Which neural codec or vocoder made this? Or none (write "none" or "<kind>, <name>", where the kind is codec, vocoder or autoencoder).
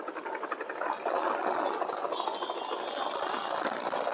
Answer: none